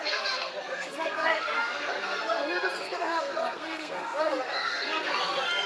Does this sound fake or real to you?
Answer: fake